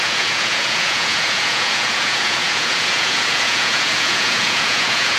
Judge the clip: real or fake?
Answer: fake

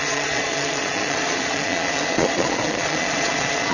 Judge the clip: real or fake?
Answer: fake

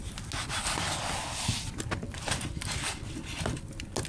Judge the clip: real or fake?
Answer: real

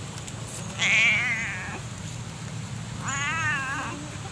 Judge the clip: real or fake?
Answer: real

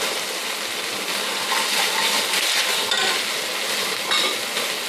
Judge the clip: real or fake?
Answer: real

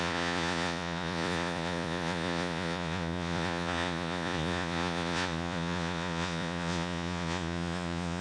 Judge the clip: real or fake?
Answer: fake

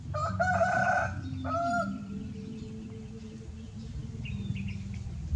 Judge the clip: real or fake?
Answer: real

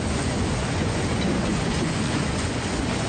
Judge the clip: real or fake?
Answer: fake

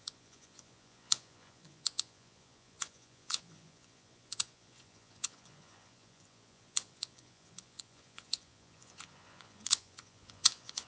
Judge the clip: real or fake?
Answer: fake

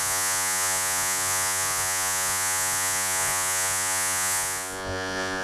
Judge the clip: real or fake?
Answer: fake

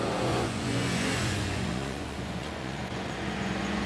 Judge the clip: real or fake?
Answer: fake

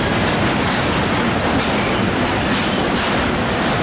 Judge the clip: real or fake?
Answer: real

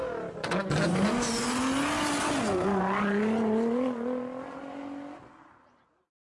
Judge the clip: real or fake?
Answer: real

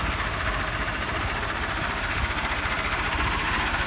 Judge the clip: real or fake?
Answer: real